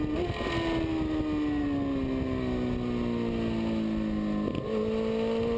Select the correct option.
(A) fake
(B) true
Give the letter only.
B